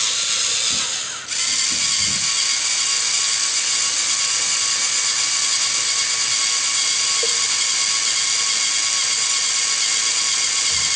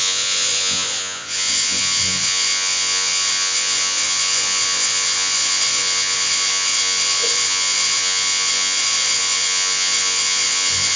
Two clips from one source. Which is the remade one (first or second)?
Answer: second